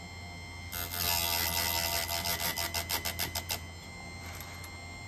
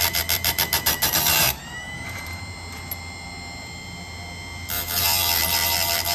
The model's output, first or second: second